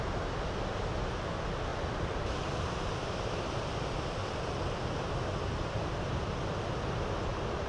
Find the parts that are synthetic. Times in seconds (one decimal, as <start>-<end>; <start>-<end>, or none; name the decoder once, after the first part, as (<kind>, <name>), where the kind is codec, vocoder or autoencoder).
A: 1.7-3.6 (vocoder, BigVGAN v2)